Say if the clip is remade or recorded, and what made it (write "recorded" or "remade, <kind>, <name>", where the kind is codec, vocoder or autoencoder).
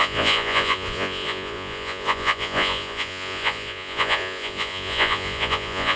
remade, vocoder, Vocos